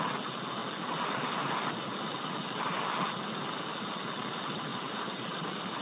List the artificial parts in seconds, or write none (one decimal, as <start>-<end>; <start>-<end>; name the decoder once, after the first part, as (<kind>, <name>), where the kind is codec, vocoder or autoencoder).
4.7-5.8 (vocoder, BigVGAN v2)